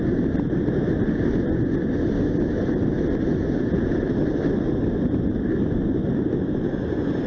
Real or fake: real